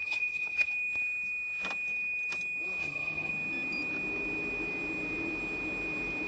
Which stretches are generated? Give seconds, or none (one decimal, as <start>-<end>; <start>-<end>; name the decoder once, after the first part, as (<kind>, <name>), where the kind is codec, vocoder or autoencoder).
0.0-0.7 (vocoder, HiFi-GAN); 2.8-3.3